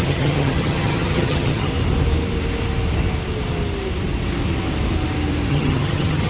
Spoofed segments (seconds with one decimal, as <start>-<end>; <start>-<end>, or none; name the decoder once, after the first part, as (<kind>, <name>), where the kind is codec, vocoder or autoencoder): 0.0-1.7 (vocoder, HiFi-GAN); 5.5-6.3